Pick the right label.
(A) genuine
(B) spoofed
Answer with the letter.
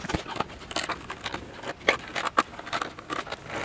A